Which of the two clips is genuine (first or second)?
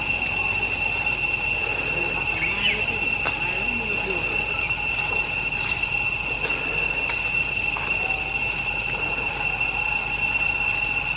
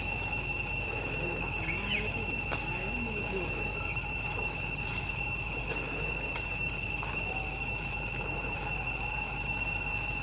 first